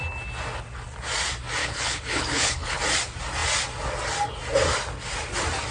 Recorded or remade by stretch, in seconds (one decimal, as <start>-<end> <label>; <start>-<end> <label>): 0.0-1.6 recorded; 1.6-2.8 remade; 2.8-5.7 recorded